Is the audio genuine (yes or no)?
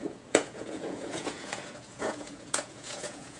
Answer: no